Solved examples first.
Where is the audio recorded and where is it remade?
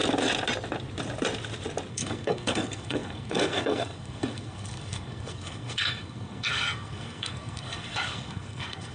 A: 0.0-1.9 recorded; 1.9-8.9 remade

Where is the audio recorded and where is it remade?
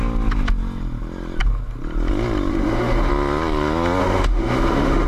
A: 0.0-2.5 recorded; 2.5-3.1 remade; 3.1-4.0 recorded; 4.0-5.1 remade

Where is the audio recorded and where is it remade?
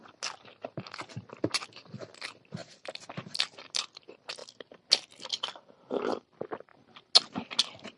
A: 0.0-2.6 recorded; 2.6-3.1 remade; 3.1-8.0 recorded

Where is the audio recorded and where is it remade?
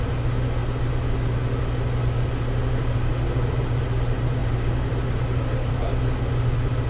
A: 0.0-4.4 recorded; 4.4-5.8 remade; 5.8-6.9 recorded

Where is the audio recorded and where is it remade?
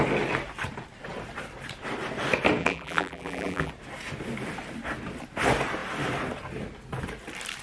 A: 0.0-2.6 recorded; 2.6-3.7 remade; 3.7-7.6 recorded